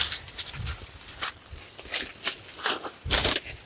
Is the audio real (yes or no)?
yes